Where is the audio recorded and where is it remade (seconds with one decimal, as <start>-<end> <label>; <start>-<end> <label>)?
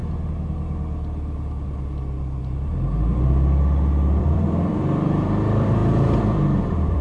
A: 0.0-4.2 recorded; 4.2-7.0 remade